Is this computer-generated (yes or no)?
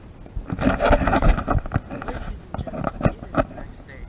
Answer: no